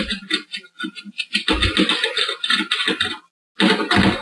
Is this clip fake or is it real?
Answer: real